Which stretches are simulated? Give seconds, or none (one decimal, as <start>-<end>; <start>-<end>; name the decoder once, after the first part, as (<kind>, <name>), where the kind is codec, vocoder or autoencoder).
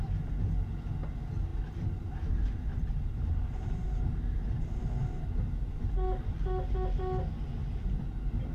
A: 1.5-4.0 (vocoder, BigVGAN v2)